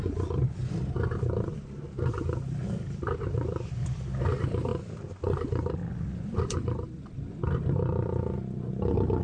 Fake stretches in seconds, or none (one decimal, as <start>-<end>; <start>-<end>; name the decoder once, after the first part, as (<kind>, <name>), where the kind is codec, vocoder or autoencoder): 0.0-4.7 (vocoder, BigVGAN v2); 5.9-9.2